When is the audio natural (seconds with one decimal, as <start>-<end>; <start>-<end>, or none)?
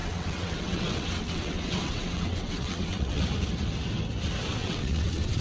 3.2-4.6